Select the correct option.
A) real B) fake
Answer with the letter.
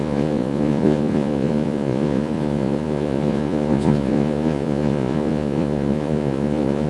B